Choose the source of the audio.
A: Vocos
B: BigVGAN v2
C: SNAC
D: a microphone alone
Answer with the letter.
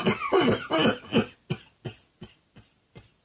D